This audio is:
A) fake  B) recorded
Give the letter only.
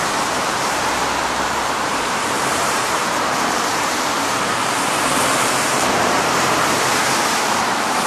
A